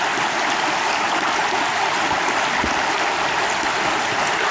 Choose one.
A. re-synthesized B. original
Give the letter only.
B